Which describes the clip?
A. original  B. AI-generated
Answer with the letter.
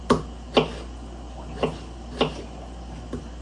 A